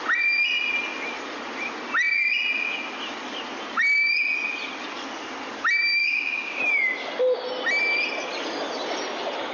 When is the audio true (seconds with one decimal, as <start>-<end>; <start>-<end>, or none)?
0.0-6.0; 6.6-9.5

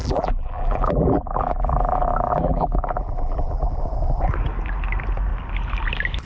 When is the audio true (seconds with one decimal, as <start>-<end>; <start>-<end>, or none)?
3.8-6.3

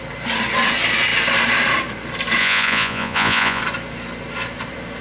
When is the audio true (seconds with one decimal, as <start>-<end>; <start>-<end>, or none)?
0.0-2.4; 3.6-5.0

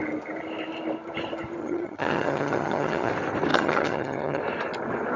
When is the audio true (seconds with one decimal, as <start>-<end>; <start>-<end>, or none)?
0.0-1.6; 3.1-3.5; 4.4-5.2